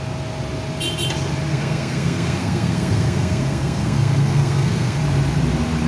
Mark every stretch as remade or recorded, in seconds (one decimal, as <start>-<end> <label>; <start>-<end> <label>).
0.0-1.5 recorded; 1.5-5.0 remade; 5.0-5.9 recorded